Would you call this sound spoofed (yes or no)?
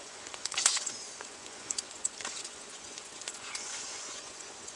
yes